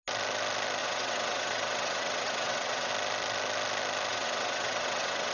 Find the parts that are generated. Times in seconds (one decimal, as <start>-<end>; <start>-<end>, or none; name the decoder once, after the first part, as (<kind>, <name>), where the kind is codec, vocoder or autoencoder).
0.8-2.9 (vocoder, WaveNeXt); 4.1-5.3